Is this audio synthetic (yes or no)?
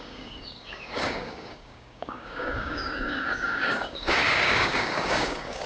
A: yes